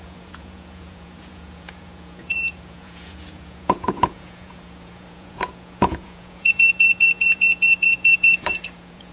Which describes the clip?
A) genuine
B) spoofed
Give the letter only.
B